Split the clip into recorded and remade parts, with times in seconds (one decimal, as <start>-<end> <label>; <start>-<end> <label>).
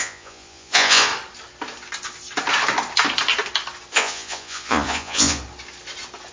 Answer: 0.0-1.1 remade; 1.1-3.9 recorded; 3.9-5.4 remade; 5.4-6.3 recorded